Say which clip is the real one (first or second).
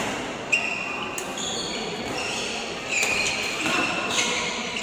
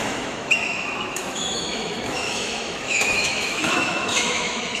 first